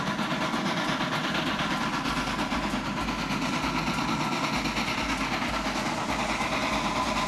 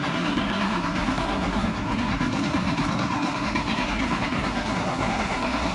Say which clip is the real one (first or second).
first